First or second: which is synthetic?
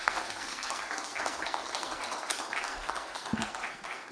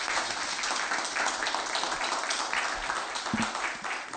first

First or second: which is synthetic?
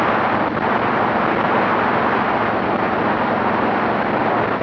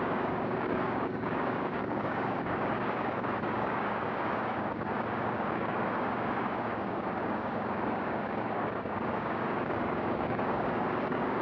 second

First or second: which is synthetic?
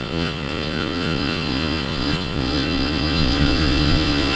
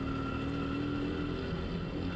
first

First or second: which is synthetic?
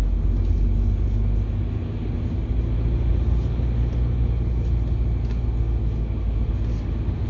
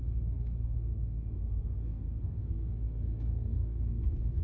second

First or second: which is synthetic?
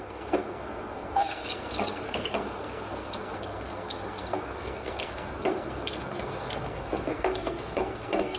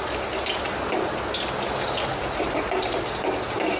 first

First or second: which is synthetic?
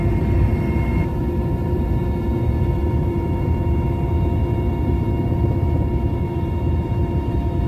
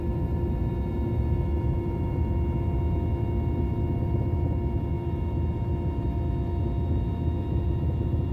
first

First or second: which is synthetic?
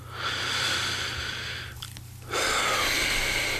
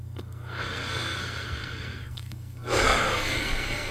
second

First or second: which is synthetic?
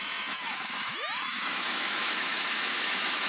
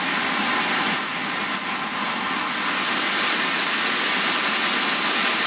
first